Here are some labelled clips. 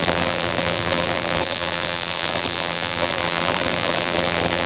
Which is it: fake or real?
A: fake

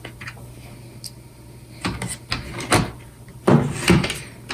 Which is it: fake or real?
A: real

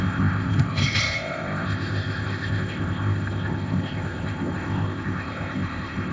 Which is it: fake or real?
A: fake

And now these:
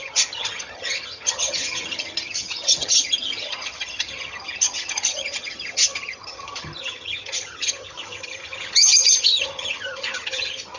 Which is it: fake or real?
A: fake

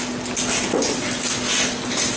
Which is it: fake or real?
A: real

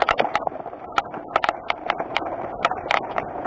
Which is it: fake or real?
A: fake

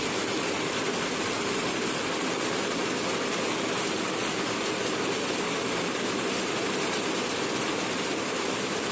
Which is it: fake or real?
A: real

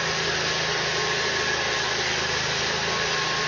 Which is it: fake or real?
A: real